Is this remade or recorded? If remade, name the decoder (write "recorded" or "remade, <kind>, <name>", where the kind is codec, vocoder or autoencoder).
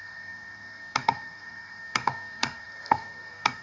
remade, codec, SNAC